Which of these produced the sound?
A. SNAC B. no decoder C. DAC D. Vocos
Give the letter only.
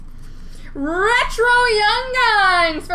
B